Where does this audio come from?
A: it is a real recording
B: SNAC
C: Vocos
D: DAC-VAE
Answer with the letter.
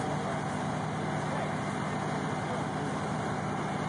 A